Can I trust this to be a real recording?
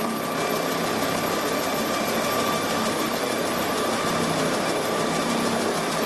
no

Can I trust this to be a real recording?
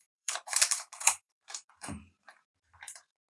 no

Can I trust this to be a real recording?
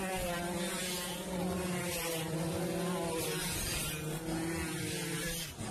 yes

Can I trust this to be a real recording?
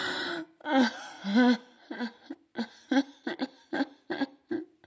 yes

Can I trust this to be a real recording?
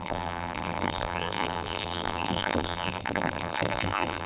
no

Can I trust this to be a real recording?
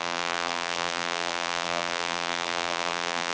no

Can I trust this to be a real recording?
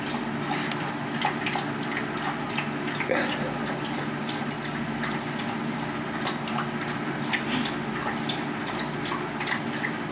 yes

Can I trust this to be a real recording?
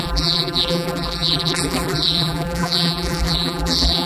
no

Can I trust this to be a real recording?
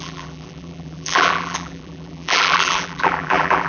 no